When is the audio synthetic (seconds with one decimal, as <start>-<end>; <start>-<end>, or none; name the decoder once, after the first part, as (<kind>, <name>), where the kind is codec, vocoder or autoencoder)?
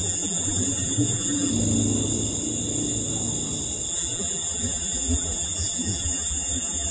0.0-1.5 (vocoder, BigVGAN v2); 3.9-6.9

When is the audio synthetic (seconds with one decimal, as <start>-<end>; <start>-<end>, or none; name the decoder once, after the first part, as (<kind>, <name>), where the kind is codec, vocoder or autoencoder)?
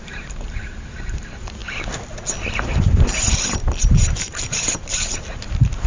0.0-1.6 (vocoder, BigVGAN v2); 4.2-5.9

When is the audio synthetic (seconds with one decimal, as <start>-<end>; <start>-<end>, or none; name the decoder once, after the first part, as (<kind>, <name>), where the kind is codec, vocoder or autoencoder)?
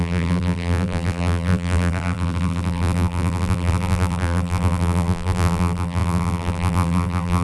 0.0-7.4 (vocoder, BigVGAN v2)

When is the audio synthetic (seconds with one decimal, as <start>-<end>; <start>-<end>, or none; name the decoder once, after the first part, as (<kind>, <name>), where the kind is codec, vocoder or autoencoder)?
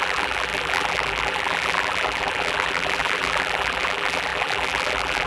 0.0-5.3 (vocoder, BigVGAN v2)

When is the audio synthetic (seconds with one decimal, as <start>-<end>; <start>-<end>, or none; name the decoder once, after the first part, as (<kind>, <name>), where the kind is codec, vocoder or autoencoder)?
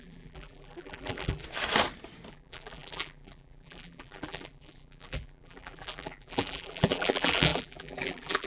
0.0-1.4 (vocoder, BigVGAN v2); 2.3-8.5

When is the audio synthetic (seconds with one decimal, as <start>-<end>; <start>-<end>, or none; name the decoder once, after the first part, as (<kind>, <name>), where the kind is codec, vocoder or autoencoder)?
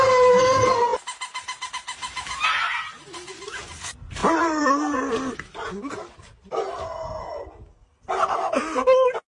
none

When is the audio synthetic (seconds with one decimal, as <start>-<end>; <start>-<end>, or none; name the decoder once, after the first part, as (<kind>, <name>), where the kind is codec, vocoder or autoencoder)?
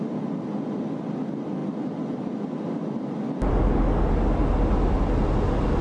none